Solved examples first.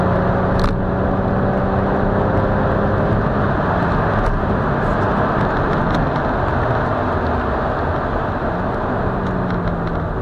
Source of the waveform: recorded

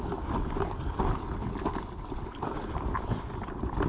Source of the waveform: recorded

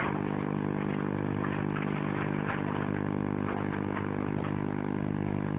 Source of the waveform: recorded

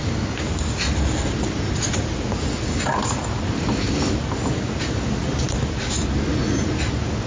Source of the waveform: recorded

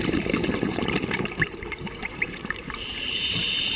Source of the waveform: remade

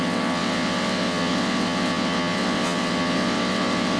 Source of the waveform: remade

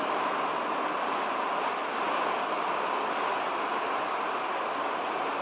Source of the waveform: recorded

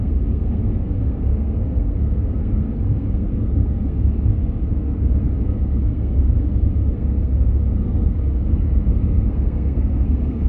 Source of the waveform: remade